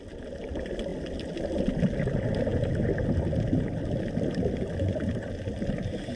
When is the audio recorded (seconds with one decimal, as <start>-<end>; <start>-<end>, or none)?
0.0-6.2